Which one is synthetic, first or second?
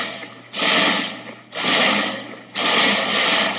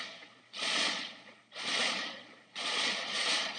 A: second